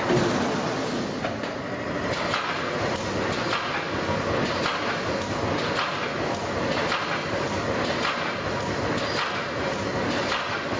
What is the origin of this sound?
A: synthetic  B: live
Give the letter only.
B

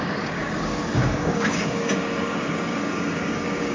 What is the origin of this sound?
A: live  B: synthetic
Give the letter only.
B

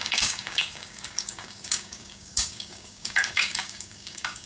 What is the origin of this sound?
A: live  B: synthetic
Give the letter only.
B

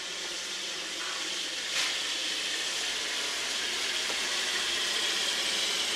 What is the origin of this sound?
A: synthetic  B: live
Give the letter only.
B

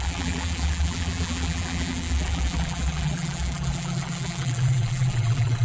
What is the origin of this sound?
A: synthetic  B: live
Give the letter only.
A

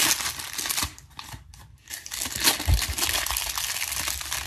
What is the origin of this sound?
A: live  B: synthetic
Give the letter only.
A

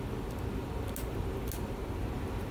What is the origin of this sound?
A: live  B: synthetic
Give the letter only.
A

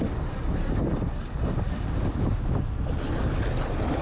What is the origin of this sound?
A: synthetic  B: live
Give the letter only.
B